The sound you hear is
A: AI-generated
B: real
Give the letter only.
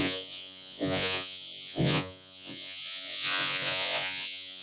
A